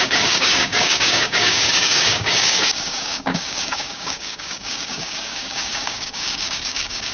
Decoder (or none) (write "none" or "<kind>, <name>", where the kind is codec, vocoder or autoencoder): codec, DAC